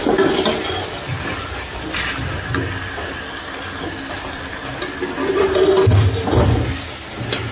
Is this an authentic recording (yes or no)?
yes